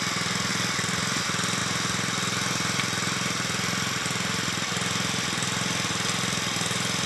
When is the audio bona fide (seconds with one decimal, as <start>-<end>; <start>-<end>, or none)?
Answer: 0.0-0.5; 1.2-7.1